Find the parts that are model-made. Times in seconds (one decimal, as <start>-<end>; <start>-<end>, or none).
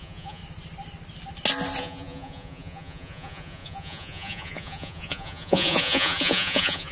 0.0-0.4; 1.8-6.9